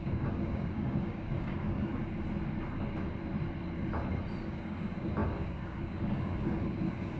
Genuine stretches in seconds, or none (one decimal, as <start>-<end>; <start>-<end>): 1.9-4.4